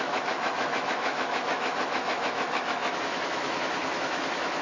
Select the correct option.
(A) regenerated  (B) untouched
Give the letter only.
A